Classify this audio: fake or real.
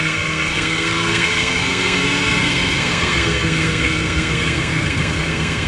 fake